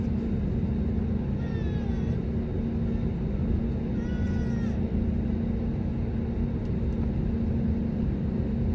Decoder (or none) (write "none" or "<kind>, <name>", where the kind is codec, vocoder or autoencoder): none